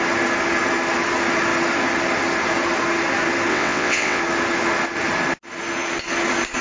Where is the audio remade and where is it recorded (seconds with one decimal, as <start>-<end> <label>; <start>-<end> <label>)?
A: 0.0-3.5 recorded; 3.5-4.2 remade; 4.2-6.6 recorded